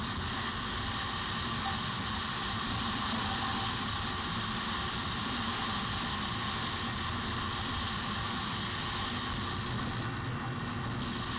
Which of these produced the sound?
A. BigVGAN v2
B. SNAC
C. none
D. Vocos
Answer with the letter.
C